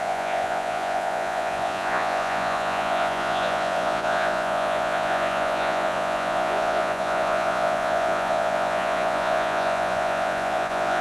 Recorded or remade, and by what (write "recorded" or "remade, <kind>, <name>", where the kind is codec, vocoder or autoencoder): remade, vocoder, Vocos